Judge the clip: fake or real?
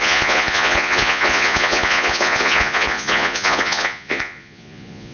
fake